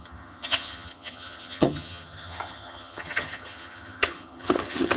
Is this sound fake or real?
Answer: fake